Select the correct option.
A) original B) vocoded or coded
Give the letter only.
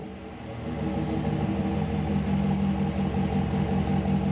A